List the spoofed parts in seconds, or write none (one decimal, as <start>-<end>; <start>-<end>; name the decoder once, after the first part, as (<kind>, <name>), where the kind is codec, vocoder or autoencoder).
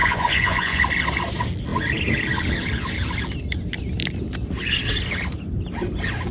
0.0-0.8 (vocoder, Vocos)